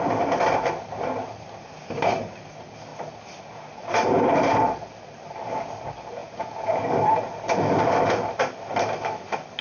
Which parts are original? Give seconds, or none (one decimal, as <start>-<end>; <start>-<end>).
0.0-6.2; 6.8-9.6